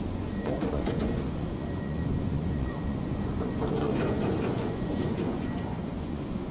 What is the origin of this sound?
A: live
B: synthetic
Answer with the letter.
B